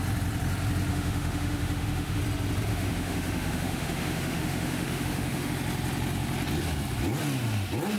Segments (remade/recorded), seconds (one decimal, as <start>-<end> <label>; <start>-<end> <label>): 0.0-0.9 recorded; 0.9-2.2 remade; 2.2-2.7 recorded; 2.7-5.5 remade; 5.5-8.0 recorded